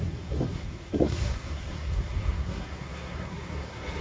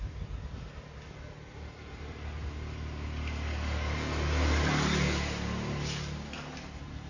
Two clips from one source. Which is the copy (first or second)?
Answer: first